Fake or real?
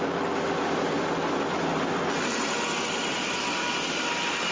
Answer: real